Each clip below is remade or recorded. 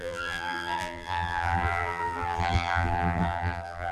remade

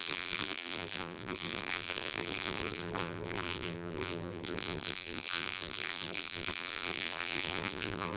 remade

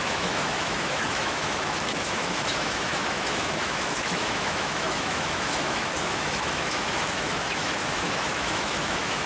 remade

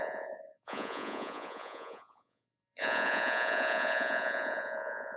remade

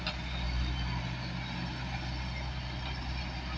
recorded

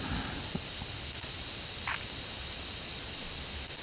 recorded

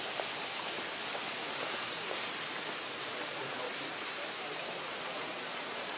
remade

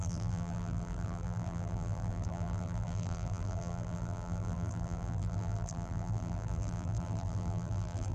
remade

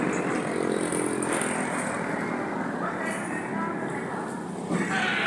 recorded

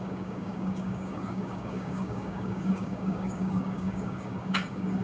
remade